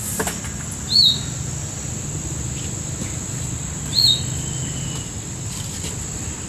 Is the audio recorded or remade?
recorded